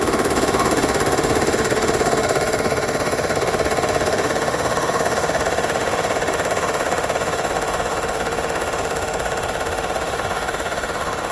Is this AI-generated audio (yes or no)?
yes